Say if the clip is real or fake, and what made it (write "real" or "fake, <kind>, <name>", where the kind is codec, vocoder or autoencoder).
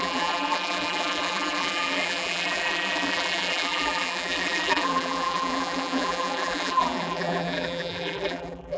fake, vocoder, BigVGAN v2